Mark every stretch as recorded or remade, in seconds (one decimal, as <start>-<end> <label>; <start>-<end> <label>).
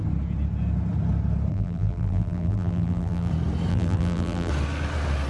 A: 0.0-1.5 recorded; 1.5-3.3 remade; 3.3-3.7 recorded; 3.7-4.5 remade; 4.5-5.3 recorded